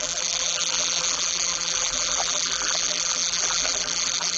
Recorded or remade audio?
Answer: remade